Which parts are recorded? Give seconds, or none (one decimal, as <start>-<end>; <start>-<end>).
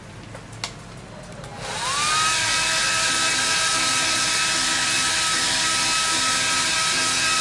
0.0-7.4